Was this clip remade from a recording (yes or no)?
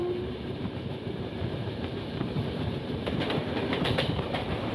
yes